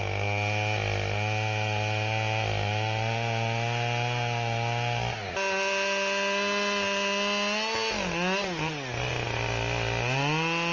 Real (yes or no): yes